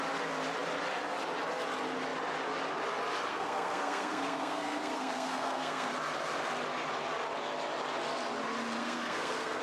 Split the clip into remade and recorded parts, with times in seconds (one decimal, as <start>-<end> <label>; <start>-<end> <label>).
0.0-3.3 recorded; 3.3-5.9 remade; 5.9-8.8 recorded; 8.8-9.6 remade